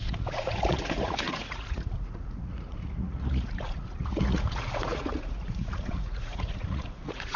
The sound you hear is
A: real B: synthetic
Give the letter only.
B